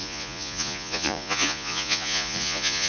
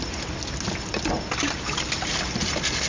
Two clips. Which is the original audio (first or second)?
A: second